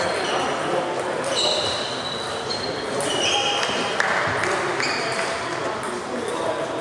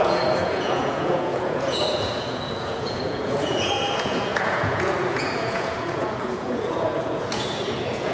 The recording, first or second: first